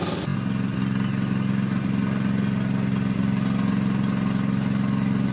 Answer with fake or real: real